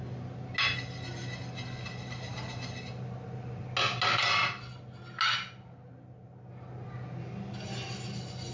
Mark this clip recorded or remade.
recorded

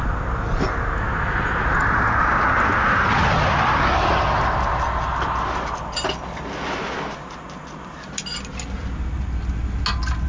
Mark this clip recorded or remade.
recorded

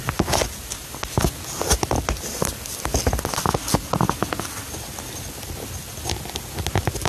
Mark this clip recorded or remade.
recorded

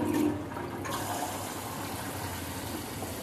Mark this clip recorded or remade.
recorded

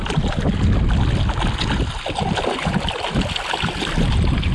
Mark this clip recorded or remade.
recorded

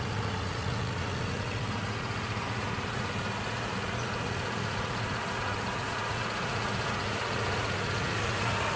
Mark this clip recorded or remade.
remade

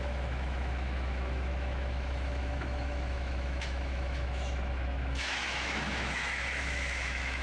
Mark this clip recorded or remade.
remade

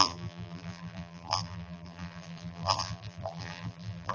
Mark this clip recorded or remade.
remade